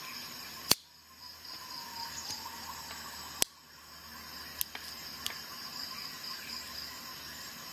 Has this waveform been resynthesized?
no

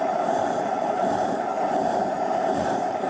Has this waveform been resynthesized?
yes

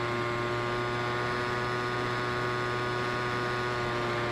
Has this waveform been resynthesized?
no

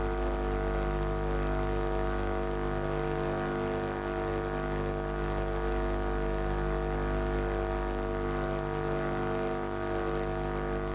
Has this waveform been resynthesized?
no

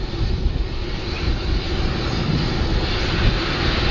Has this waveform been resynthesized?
no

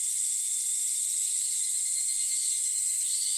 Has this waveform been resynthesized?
no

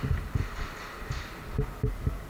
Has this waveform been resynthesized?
yes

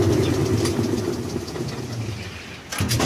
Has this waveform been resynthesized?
no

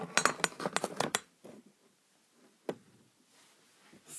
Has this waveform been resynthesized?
no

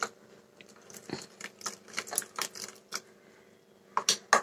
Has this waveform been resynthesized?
no